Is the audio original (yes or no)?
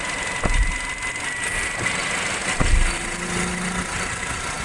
yes